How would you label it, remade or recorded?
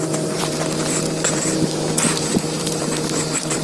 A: remade